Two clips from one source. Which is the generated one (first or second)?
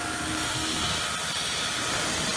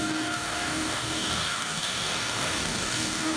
second